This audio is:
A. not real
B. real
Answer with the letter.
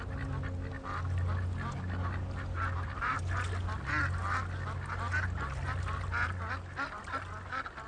B